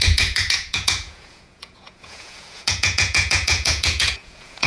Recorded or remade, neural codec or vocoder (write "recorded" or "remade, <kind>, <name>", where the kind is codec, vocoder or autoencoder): remade, vocoder, Vocos